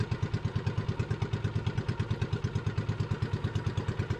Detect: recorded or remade recorded